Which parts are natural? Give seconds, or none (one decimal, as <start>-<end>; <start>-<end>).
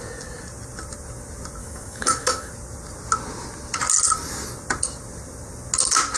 0.0-1.6; 2.5-6.2